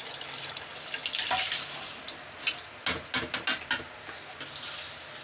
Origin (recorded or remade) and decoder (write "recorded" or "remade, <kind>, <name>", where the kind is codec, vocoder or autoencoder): recorded